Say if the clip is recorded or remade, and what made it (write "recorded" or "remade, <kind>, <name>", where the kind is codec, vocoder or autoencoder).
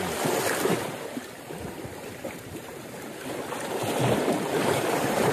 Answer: remade, vocoder, BigVGAN v2